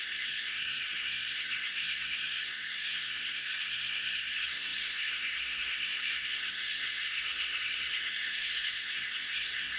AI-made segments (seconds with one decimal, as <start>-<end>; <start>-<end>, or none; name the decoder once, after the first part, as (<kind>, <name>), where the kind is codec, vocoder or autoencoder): 0.0-9.8 (codec, SNAC)